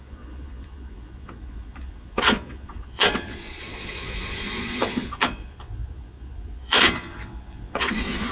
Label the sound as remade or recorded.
remade